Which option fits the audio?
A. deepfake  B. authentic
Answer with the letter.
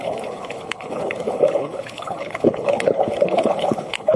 A